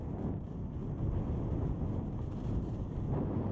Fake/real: real